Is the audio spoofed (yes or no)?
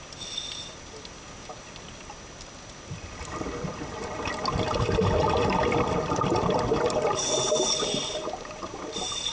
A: no